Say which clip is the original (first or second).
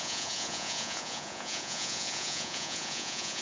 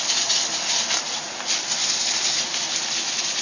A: second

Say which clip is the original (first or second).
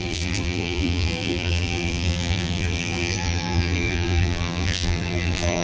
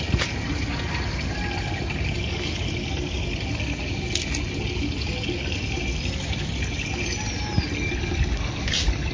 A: second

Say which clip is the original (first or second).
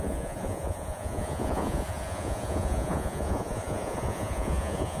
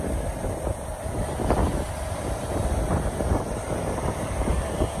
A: second